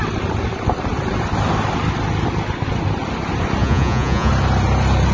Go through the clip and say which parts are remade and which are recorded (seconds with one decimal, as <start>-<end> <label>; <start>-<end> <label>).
0.0-3.6 recorded; 3.6-4.3 remade; 4.3-5.1 recorded